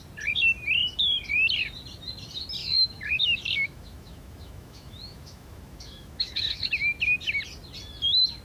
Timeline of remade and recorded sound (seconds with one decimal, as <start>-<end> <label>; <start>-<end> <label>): 0.0-2.6 recorded; 2.6-6.7 remade; 6.7-8.4 recorded